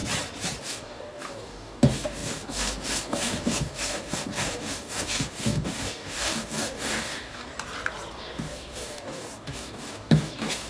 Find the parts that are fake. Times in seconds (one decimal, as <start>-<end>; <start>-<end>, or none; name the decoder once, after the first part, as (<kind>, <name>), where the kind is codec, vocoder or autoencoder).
0.6-7.5 (codec, DAC); 8.1-10.7